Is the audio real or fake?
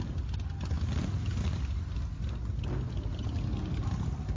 real